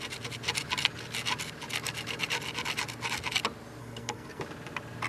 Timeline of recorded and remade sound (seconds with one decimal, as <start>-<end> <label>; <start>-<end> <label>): 0.0-3.8 recorded; 3.8-4.4 remade; 4.4-5.1 recorded